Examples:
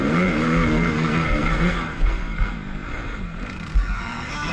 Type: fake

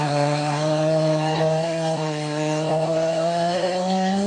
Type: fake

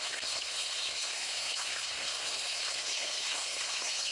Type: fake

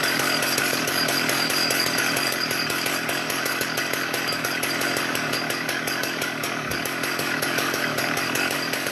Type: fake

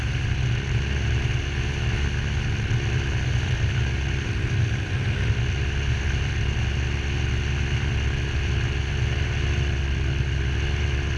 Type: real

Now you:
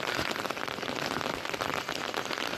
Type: fake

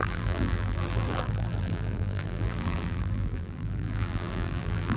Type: fake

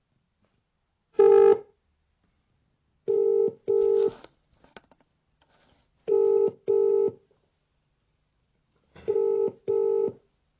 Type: real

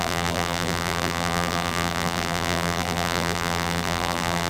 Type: fake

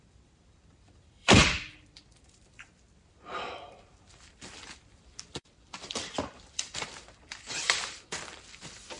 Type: fake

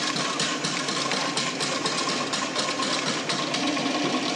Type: real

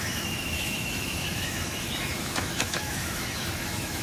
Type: fake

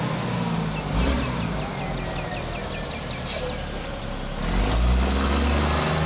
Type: real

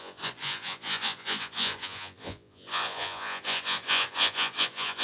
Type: fake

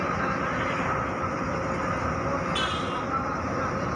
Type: real